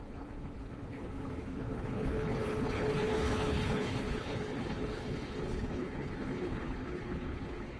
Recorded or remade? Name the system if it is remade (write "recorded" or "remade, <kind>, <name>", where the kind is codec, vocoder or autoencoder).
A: remade, codec, HILCodec